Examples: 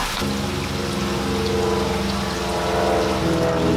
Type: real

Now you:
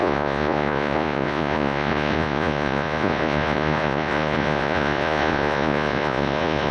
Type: fake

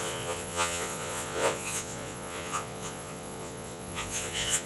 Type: fake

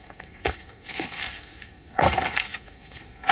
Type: fake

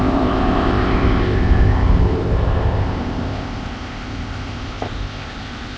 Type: fake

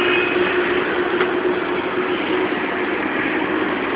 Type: real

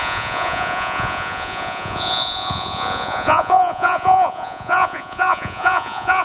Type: fake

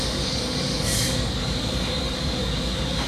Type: fake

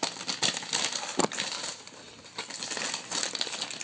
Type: real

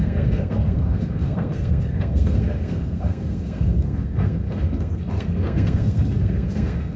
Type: fake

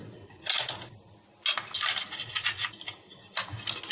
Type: real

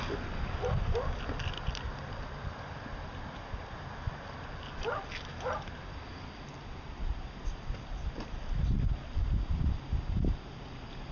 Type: real